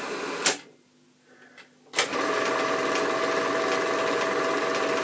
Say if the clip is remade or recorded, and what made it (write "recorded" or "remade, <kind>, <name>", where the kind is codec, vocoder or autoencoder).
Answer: recorded